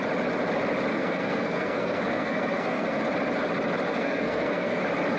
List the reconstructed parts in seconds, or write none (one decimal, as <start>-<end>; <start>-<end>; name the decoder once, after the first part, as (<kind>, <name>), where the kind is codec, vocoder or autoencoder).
0.9-3.0 (codec, SNAC); 3.9-4.8